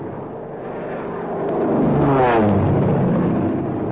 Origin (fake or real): real